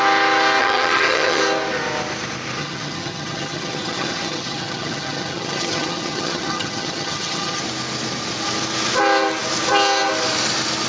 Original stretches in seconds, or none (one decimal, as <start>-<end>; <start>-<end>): 0.0-0.6; 1.4-2.6; 7.6-10.9